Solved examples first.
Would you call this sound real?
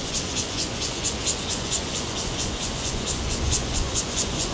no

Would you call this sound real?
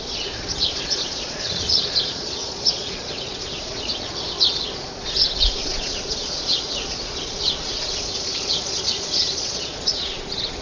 no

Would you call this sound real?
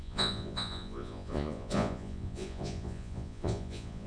no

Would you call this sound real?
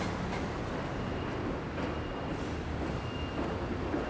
yes